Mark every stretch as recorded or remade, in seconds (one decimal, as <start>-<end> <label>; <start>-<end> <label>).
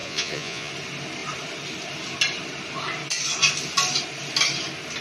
0.0-0.7 remade; 0.7-5.0 recorded